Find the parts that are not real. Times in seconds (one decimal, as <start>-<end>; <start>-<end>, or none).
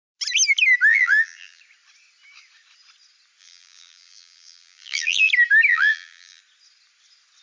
0.9-1.6; 3.4-5.3; 5.7-6.4